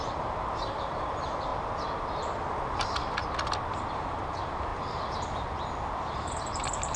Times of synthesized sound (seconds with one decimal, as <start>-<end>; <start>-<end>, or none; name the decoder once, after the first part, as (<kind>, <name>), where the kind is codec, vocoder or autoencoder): 0.0-1.5 (vocoder, BigVGAN v2); 3.9-4.7; 6.1-7.0